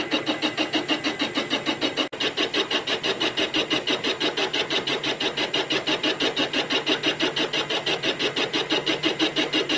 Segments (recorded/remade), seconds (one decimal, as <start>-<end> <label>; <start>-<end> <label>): 0.0-8.5 recorded; 8.5-9.8 remade